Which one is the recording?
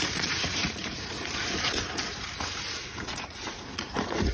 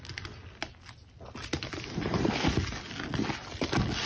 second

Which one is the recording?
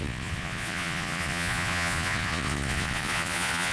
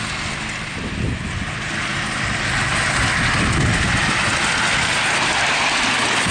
second